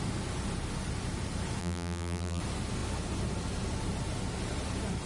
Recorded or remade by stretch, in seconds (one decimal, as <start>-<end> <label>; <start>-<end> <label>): 0.0-1.6 recorded; 1.6-2.4 remade; 2.4-5.1 recorded